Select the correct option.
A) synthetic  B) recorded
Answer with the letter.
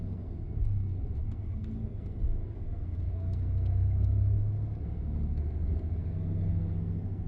A